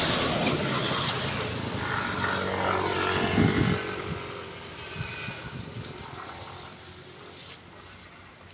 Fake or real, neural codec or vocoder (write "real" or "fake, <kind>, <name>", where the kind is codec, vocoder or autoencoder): real